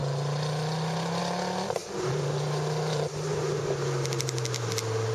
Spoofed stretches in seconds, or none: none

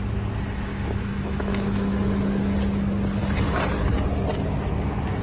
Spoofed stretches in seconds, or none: 0.7-1.9

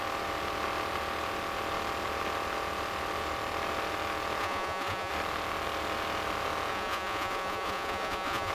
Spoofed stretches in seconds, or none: 4.4-5.1; 6.7-8.5

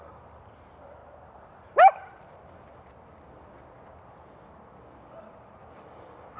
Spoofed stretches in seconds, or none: none

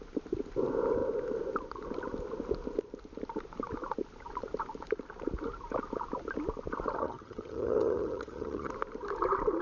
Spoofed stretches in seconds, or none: 7.0-8.7

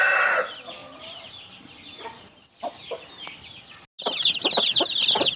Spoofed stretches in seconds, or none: none

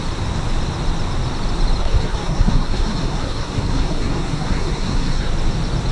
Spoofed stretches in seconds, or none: 1.8-5.3

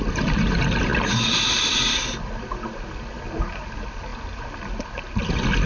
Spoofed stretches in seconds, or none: none